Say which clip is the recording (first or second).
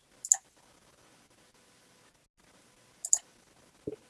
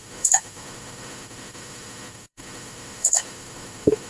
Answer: first